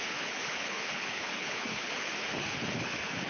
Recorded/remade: remade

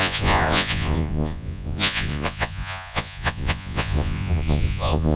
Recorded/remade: remade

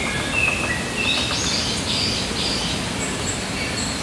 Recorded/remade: recorded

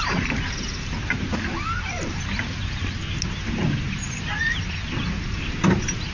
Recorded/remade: recorded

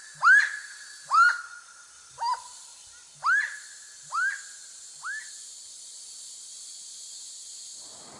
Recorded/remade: recorded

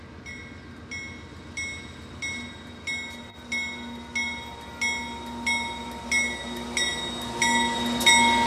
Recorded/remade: recorded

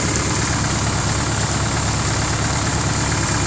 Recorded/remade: recorded